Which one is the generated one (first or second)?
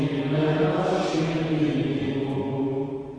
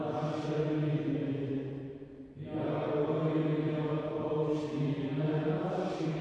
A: second